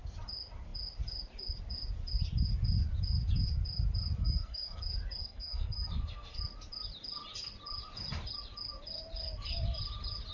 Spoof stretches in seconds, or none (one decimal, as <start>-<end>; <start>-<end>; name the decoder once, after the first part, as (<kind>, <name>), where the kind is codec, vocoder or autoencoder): 4.2-4.8 (codec, SNAC); 5.2-6.4